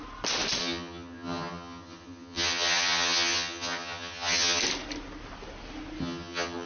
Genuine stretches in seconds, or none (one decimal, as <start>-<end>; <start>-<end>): 0.0-0.6; 4.6-6.0